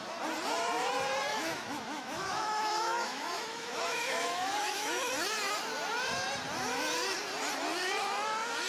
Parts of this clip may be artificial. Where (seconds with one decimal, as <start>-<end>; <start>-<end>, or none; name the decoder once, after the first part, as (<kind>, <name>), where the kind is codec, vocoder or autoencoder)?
1.3-5.1 (autoencoder, DAC-VAE)